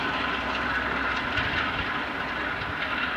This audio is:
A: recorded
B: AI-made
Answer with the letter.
A